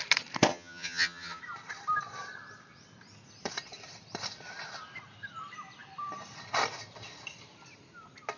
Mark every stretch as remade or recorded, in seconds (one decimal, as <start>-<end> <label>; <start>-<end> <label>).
0.0-0.5 recorded; 0.5-1.4 remade; 1.4-8.4 recorded